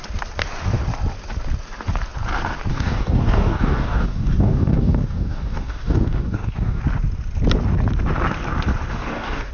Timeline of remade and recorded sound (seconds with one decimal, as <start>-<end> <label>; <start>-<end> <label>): 0.0-2.7 recorded; 2.7-6.8 remade; 6.8-8.9 recorded; 8.9-9.5 remade